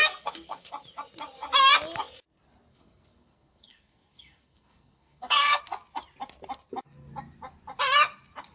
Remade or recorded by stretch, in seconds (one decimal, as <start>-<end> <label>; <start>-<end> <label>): 0.0-0.7 remade; 0.7-2.7 recorded; 2.7-5.6 remade; 5.6-8.5 recorded